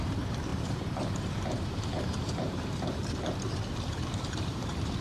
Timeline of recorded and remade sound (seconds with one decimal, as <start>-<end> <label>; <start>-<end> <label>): 0.0-5.0 remade

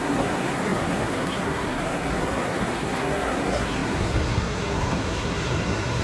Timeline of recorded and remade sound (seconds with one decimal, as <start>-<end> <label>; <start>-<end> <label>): 0.0-6.0 remade

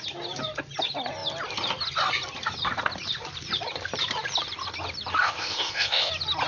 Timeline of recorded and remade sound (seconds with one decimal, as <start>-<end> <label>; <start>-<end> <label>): 0.0-5.2 recorded; 5.2-6.1 remade; 6.1-6.5 recorded

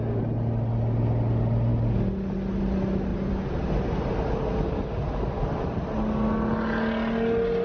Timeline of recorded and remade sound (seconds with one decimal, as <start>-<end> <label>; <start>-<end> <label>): 0.0-3.1 recorded; 3.1-4.0 remade; 4.0-7.6 recorded

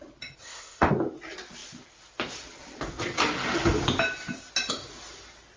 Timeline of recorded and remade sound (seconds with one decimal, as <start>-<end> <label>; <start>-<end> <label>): 0.0-0.4 recorded; 0.4-0.9 remade; 0.9-5.6 recorded

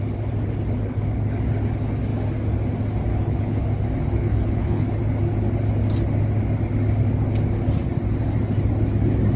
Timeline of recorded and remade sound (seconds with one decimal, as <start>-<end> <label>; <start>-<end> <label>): 0.0-3.1 recorded; 3.1-3.6 remade; 3.6-4.2 recorded; 4.2-5.0 remade; 5.0-9.4 recorded

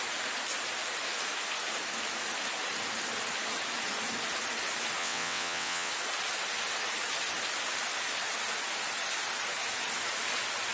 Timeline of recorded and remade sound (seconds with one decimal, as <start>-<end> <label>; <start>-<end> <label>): 0.0-5.0 recorded; 5.0-5.9 remade; 5.9-10.7 recorded